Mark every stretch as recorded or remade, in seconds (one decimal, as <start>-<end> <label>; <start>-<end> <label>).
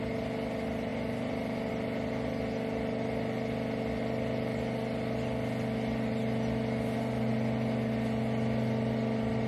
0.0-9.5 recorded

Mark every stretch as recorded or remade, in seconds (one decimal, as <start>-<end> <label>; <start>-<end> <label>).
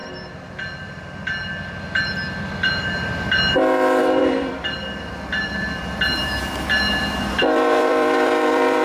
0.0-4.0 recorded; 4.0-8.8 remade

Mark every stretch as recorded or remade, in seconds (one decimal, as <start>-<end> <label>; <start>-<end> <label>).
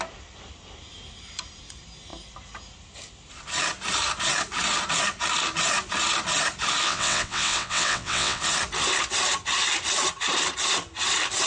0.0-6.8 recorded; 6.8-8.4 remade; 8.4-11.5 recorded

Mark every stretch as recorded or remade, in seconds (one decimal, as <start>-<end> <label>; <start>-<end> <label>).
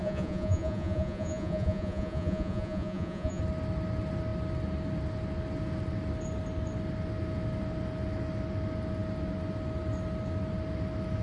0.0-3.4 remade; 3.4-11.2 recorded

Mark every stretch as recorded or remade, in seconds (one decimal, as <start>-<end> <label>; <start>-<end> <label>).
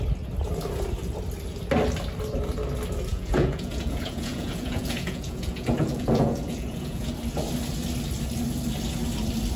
0.0-3.1 recorded; 3.1-7.1 remade; 7.1-9.6 recorded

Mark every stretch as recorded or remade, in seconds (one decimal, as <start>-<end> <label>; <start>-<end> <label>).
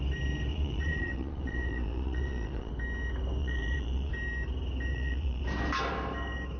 0.0-0.5 recorded; 0.5-2.7 remade; 2.7-3.4 recorded; 3.4-4.1 remade; 4.1-4.9 recorded; 4.9-5.4 remade; 5.4-6.6 recorded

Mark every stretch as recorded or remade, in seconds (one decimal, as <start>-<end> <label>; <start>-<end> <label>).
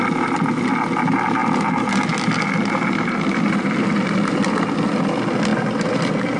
0.0-6.4 recorded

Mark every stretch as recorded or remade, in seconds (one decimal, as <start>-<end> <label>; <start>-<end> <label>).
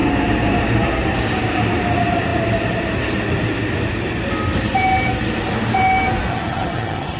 0.0-6.3 recorded; 6.3-7.2 remade